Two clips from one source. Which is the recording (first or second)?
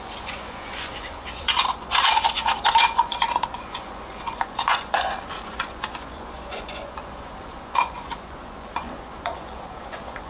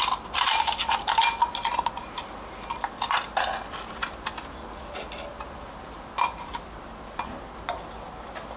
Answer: second